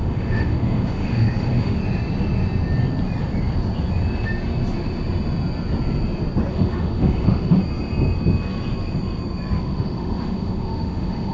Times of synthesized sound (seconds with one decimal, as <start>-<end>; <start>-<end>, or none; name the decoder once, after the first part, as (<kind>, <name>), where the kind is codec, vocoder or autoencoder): 0.0-1.8 (autoencoder, DAC-VAE); 6.5-7.6; 9.6-11.3